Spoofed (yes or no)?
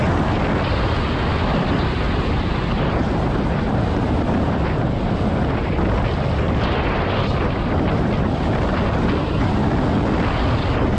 no